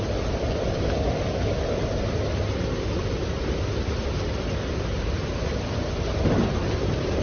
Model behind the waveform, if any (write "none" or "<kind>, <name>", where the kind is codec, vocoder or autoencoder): none